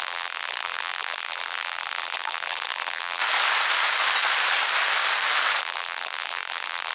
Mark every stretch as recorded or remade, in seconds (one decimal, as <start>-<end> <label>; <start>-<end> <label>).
0.0-3.2 remade; 3.2-5.6 recorded; 5.6-6.9 remade